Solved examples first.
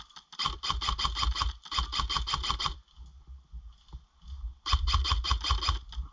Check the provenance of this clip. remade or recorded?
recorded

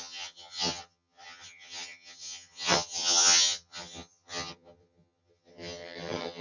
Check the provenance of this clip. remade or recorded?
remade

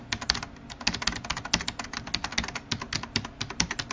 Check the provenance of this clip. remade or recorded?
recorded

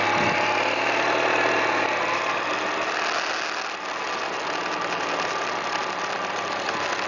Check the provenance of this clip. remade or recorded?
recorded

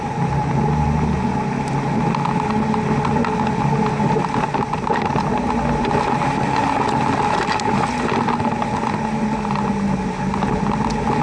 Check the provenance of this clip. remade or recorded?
recorded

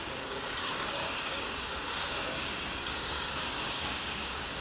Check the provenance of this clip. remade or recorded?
remade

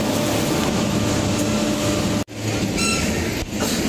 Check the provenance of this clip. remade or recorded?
recorded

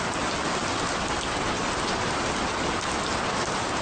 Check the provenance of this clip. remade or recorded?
recorded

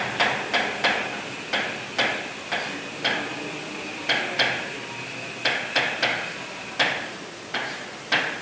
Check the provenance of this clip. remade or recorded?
recorded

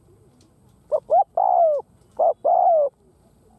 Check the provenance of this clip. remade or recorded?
recorded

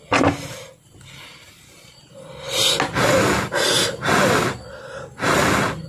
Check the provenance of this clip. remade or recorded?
recorded